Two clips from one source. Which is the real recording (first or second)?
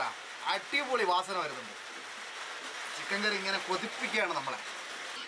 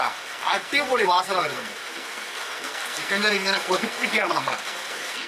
first